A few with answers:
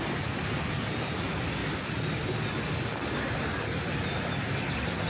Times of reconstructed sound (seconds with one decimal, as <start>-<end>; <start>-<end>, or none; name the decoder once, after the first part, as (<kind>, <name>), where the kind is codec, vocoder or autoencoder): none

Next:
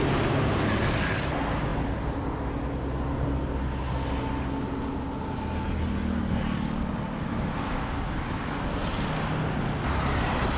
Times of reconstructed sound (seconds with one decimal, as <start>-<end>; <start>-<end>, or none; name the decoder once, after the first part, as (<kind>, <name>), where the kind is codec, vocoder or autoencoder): none

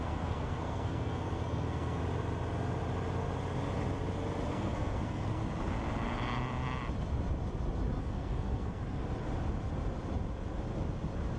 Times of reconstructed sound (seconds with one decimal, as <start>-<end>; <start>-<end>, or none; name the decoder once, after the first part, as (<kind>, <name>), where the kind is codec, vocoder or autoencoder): 0.0-2.0 (codec, SNAC); 4.5-5.4; 8.0-8.8

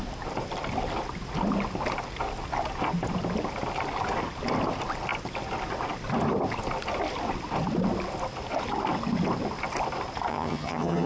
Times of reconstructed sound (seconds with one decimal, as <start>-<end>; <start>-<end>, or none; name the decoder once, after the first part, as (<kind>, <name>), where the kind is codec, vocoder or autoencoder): 10.3-11.1 (vocoder, HiFi-GAN)

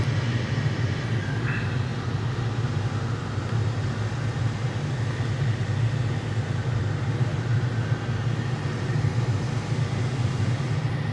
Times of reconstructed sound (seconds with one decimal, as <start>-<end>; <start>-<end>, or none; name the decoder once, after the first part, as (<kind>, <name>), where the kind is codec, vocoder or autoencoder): none